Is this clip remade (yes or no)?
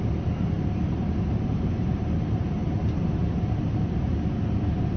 no